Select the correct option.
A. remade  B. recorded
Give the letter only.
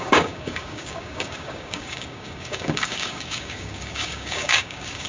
A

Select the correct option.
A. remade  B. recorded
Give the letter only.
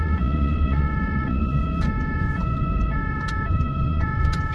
A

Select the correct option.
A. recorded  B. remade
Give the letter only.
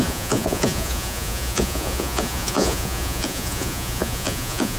B